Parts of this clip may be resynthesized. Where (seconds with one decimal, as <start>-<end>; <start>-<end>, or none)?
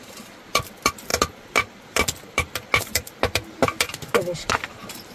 none